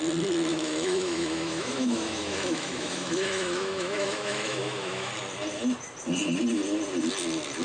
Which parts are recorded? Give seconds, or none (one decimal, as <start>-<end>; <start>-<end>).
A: 0.0-0.5; 5.1-7.6